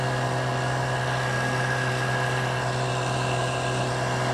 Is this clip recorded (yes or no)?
yes